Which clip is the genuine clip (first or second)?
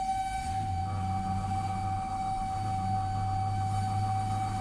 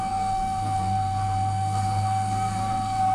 first